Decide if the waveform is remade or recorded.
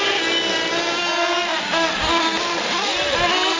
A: recorded